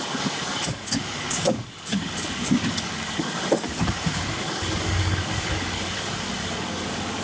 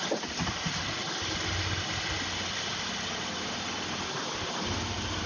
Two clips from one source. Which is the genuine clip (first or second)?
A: second